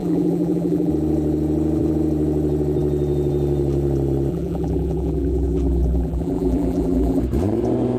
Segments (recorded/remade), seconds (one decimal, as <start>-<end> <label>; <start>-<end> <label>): 0.0-0.9 remade; 0.9-4.3 recorded; 4.3-7.2 remade; 7.2-8.0 recorded